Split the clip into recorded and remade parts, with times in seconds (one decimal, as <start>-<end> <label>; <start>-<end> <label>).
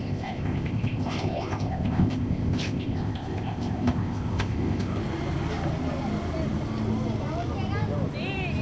0.0-5.0 remade; 5.0-8.6 recorded